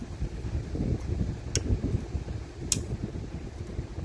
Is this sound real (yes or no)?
yes